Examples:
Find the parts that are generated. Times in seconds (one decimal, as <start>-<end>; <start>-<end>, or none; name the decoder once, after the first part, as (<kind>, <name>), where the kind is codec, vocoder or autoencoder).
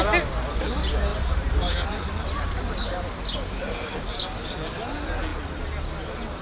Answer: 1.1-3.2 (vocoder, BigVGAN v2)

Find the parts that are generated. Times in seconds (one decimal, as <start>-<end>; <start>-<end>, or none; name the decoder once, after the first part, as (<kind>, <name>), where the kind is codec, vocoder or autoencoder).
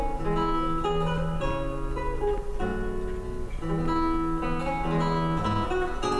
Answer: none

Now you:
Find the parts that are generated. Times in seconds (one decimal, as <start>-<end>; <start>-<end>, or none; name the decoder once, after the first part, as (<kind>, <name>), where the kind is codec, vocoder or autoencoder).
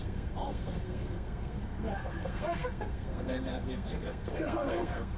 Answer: 0.0-5.2 (codec, SNAC)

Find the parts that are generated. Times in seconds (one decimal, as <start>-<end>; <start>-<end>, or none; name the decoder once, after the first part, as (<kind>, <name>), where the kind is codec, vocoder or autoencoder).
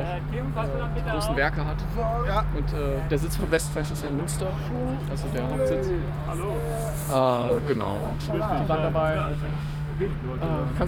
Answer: 3.4-4.2 (autoencoder, DAC-VAE); 7.1-8.3; 9.2-10.1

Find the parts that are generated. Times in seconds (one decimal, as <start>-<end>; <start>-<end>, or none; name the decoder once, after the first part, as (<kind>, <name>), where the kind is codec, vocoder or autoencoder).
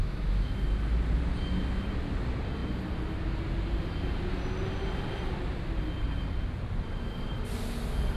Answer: 0.0-0.6 (autoencoder, DAC-VAE)